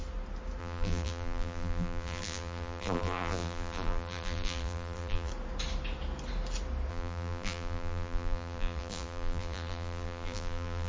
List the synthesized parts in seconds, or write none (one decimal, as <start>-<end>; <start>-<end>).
0.6-5.3; 6.9-10.9